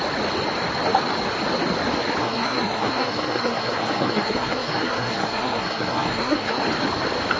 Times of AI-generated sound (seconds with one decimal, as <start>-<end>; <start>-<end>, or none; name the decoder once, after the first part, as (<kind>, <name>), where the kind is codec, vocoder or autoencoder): 2.2-6.6 (codec, SNAC)